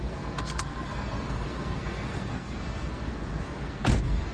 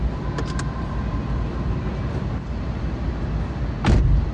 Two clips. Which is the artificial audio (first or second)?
first